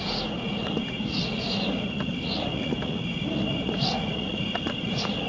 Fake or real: fake